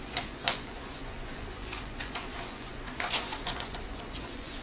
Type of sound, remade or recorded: remade